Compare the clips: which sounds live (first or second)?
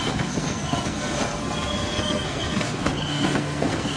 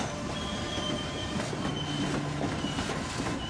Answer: second